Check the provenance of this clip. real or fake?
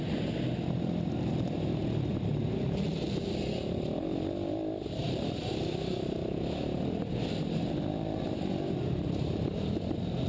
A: fake